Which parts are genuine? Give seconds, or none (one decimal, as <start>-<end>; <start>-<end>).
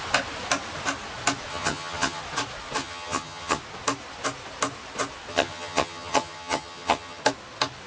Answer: 0.0-1.5; 2.2-2.8; 3.6-5.3; 7.2-7.9